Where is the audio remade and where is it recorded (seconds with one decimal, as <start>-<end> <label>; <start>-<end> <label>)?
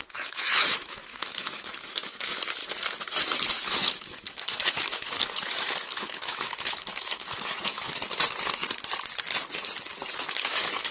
0.0-2.6 remade; 2.6-3.5 recorded; 3.5-8.0 remade; 8.0-10.2 recorded; 10.2-10.9 remade